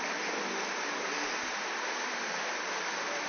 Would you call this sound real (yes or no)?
yes